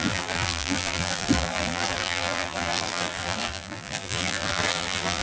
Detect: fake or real fake